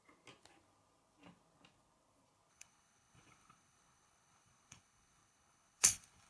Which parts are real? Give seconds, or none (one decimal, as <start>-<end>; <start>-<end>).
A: 0.0-2.5